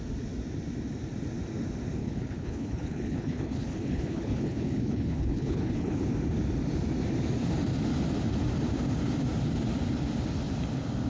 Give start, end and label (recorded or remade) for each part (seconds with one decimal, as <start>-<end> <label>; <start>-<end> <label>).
0.0-2.0 recorded; 2.0-6.1 remade; 6.1-11.1 recorded